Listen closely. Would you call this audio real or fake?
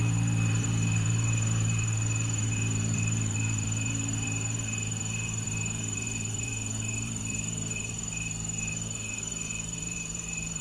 fake